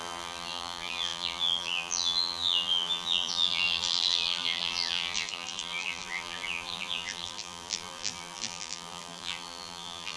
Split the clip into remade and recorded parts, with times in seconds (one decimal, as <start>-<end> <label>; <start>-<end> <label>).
0.0-10.2 remade